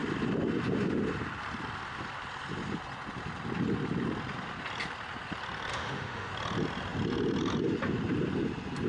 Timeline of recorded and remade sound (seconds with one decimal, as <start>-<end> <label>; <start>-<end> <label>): 0.0-5.7 recorded; 5.7-6.3 remade; 6.3-8.9 recorded